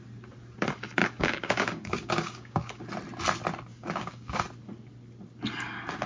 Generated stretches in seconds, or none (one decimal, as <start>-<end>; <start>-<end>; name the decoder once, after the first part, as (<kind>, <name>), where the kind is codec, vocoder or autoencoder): 1.0-2.9 (codec, DAC); 3.7-4.4